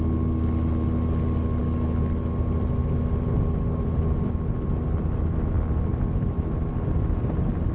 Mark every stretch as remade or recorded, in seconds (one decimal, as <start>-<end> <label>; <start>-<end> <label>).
0.0-7.7 recorded